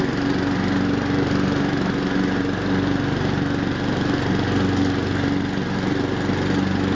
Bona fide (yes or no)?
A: yes